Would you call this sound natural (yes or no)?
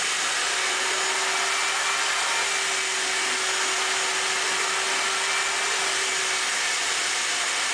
yes